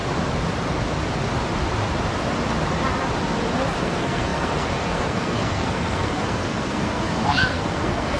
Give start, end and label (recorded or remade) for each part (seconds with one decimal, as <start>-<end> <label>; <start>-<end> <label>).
0.0-3.8 recorded; 3.8-8.2 remade